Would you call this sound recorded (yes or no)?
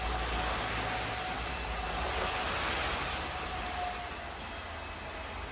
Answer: yes